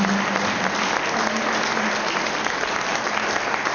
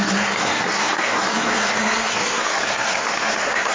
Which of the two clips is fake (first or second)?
second